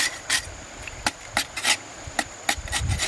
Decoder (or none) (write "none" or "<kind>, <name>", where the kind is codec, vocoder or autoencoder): none